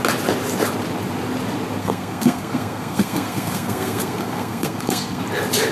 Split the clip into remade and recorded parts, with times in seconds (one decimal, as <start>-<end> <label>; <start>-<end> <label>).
0.0-1.8 recorded; 1.8-5.2 remade; 5.2-5.7 recorded